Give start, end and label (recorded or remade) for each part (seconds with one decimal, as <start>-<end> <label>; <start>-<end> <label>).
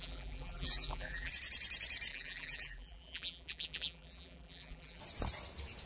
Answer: 0.0-1.3 remade; 1.3-2.1 recorded; 2.1-5.0 remade; 5.0-5.9 recorded